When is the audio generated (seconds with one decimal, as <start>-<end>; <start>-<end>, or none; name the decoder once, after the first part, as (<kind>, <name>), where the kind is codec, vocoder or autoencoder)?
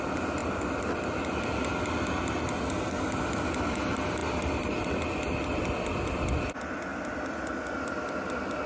0.4-1.4 (vocoder, BigVGAN v2)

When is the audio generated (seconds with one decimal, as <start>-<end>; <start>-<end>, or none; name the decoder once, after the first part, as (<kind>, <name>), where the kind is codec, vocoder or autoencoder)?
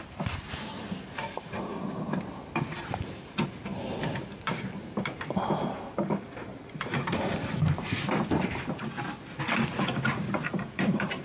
0.0-1.7 (vocoder, BigVGAN v2); 2.7-8.8; 10.1-11.2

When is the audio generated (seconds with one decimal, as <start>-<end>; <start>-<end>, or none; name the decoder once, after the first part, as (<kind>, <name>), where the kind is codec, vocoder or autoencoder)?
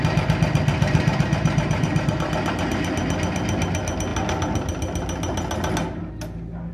0.7-2.1 (vocoder, BigVGAN v2)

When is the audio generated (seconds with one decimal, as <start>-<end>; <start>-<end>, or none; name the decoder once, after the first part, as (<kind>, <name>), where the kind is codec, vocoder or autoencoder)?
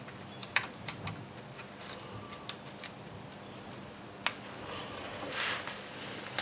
0.4-1.1 (vocoder, BigVGAN v2)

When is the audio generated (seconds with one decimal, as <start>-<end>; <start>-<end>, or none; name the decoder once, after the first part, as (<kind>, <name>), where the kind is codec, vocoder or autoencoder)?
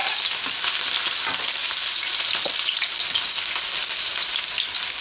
1.6-2.8 (vocoder, BigVGAN v2); 3.8-4.4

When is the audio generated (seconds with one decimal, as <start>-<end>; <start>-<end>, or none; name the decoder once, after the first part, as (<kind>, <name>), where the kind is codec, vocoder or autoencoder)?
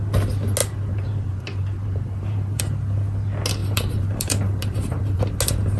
0.6-2.6 (vocoder, BigVGAN v2); 3.6-5.2